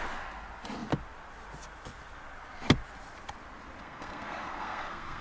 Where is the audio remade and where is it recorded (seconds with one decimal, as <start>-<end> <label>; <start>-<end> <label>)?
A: 0.0-3.8 recorded; 3.8-5.2 remade